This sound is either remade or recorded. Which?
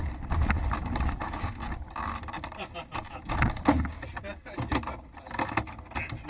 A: recorded